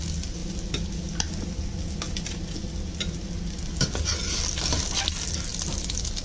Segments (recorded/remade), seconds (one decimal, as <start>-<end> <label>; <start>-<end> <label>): 0.0-6.2 recorded